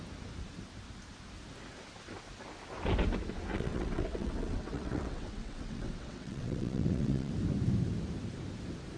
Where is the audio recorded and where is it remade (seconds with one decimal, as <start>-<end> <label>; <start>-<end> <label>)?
0.0-3.5 recorded; 3.5-7.3 remade; 7.3-9.0 recorded